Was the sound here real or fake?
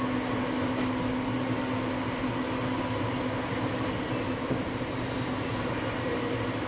real